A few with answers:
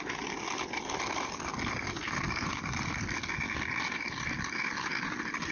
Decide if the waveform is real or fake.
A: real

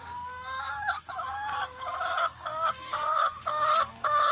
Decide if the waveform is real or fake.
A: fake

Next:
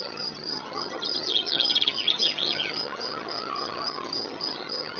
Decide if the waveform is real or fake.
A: fake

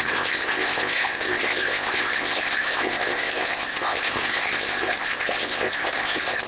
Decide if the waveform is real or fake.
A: fake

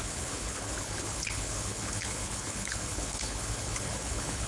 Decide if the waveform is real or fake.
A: fake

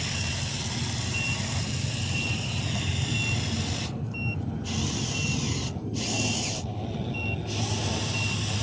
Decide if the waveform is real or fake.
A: real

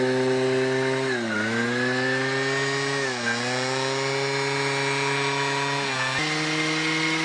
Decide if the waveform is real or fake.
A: real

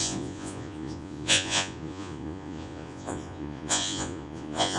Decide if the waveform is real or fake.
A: fake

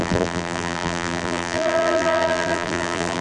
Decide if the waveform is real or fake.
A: fake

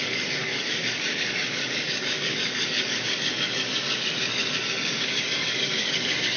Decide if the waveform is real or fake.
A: fake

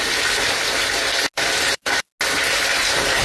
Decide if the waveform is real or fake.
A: real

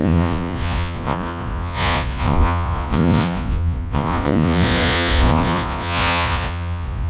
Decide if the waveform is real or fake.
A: fake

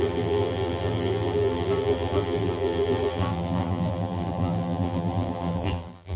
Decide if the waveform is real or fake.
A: fake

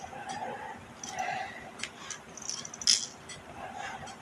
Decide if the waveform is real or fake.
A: real